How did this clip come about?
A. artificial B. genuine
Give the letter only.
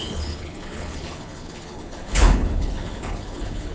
A